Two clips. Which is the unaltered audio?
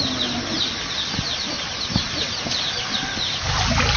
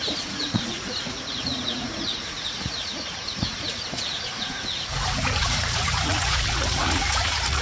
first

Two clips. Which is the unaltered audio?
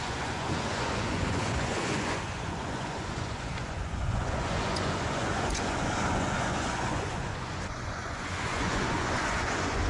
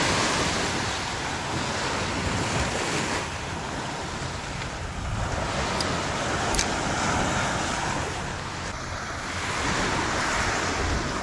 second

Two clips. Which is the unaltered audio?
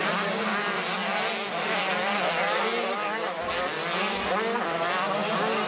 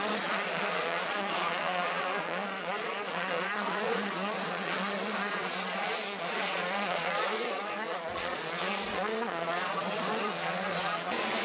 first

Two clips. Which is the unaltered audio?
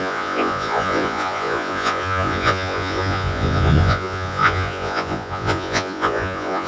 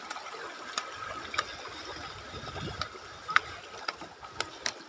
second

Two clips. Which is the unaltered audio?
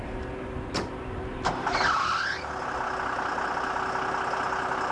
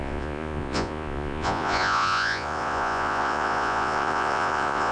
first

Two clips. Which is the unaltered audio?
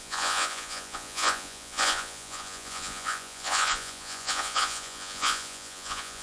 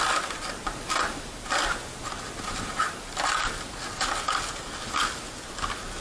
second